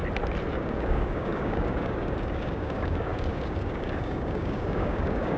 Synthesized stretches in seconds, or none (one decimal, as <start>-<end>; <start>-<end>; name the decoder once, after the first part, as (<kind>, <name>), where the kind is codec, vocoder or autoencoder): 0.5-5.4 (codec, DAC)